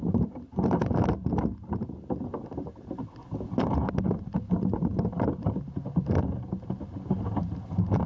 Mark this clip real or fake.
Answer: real